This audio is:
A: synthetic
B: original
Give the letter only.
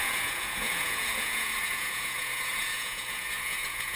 A